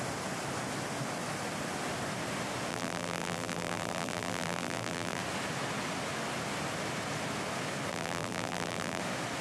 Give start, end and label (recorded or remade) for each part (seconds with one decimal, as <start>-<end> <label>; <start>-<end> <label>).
0.0-2.7 recorded; 2.7-5.2 remade; 5.2-7.9 recorded; 7.9-9.0 remade; 9.0-9.4 recorded

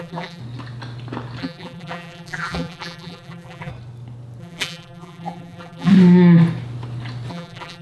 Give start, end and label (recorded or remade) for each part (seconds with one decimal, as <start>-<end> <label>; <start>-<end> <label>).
0.0-0.4 remade; 0.4-1.4 recorded; 1.4-3.7 remade; 3.7-4.4 recorded; 4.4-5.9 remade; 5.9-7.3 recorded; 7.3-7.8 remade

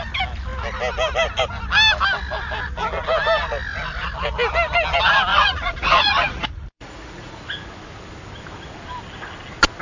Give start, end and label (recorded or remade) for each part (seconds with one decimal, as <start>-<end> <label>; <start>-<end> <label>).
0.0-5.3 recorded; 5.3-7.4 remade; 7.4-9.8 recorded

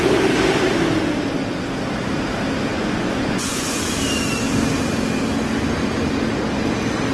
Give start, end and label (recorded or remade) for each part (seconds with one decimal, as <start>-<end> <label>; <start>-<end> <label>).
0.0-2.7 recorded; 2.7-3.8 remade; 3.8-7.1 recorded